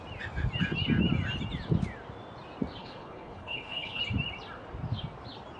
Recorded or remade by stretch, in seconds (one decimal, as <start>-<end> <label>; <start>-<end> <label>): 0.0-2.8 recorded; 2.8-4.0 remade; 4.0-5.6 recorded

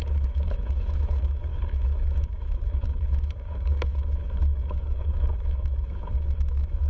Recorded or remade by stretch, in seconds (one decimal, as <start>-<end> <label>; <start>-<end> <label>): 0.0-6.9 remade

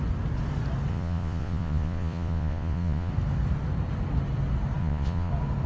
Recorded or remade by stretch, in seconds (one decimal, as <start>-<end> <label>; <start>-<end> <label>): 0.0-0.9 recorded; 0.9-3.1 remade; 3.1-4.8 recorded; 4.8-5.3 remade; 5.3-5.7 recorded

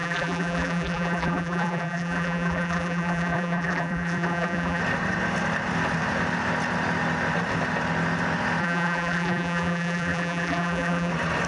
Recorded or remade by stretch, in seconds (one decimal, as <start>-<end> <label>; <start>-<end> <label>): 0.0-4.8 remade; 4.8-8.6 recorded; 8.6-11.1 remade; 11.1-11.5 recorded